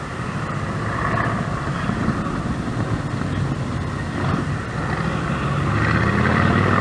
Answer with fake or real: fake